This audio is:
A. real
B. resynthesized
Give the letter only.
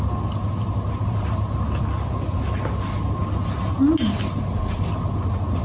A